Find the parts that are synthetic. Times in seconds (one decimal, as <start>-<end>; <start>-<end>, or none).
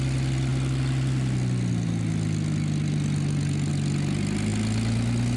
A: none